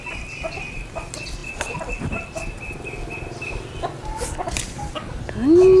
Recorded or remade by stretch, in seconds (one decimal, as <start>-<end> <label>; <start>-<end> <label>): 0.0-5.8 recorded